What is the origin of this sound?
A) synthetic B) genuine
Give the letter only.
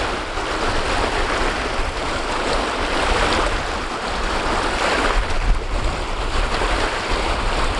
B